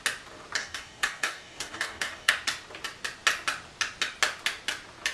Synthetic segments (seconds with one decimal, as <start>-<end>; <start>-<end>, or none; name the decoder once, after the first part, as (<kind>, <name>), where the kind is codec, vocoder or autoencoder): 0.6-2.3 (codec, DAC)